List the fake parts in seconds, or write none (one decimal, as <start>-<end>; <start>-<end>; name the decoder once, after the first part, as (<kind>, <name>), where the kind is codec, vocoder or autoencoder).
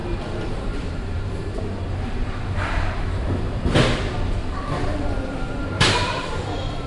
0.0-6.9 (vocoder, BigVGAN v2)